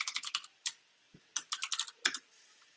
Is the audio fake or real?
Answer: real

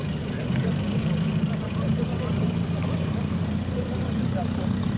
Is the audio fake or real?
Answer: fake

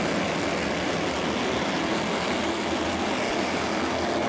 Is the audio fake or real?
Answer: real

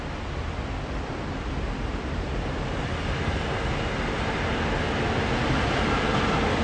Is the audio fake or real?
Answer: real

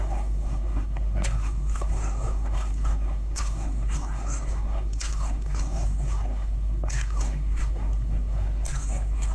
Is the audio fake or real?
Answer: fake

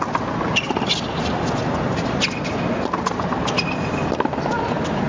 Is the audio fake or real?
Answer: real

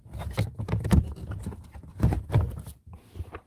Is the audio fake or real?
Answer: real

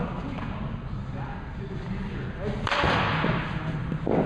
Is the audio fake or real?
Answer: real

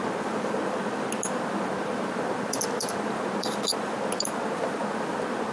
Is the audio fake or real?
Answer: fake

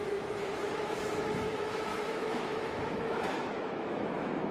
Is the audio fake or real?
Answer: fake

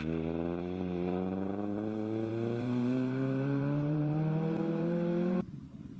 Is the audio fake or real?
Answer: fake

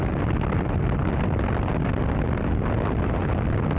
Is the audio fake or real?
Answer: real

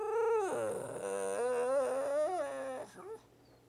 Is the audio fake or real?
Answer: real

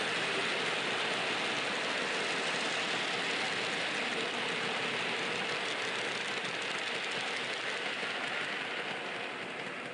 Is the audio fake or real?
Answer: real